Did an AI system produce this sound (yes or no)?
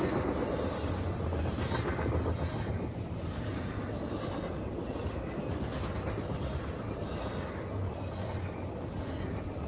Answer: no